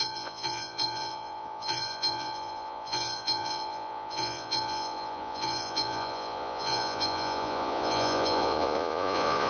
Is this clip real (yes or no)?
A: no